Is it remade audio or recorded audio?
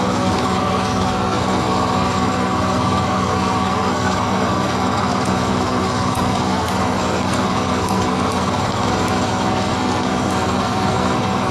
remade